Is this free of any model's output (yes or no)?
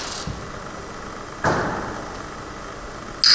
yes